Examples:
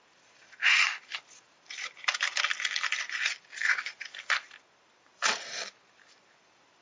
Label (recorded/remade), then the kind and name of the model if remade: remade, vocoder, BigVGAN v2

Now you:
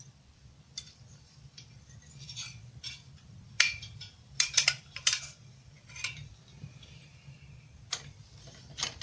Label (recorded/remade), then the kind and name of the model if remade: remade, vocoder, BigVGAN v2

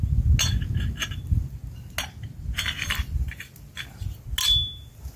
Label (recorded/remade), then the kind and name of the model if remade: recorded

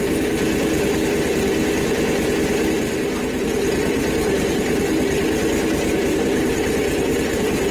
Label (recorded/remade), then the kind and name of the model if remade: remade, vocoder, BigVGAN v2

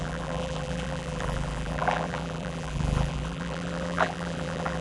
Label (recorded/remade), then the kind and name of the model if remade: remade, vocoder, BigVGAN v2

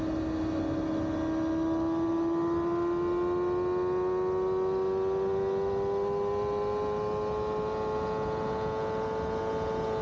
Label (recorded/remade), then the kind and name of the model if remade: recorded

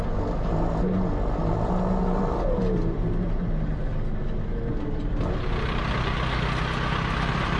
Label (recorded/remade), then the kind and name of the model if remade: recorded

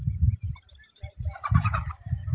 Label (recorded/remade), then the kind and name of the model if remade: remade, vocoder, BigVGAN v2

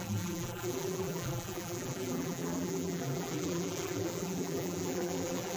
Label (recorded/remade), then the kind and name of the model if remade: remade, vocoder, BigVGAN v2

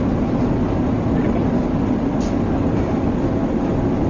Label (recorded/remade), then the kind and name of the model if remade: recorded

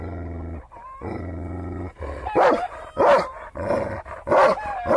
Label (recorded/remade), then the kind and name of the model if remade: recorded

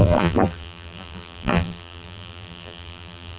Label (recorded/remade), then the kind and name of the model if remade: remade, vocoder, BigVGAN v2